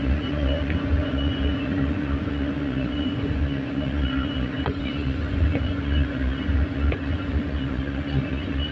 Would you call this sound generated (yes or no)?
yes